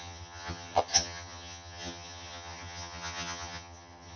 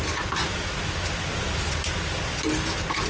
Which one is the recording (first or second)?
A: second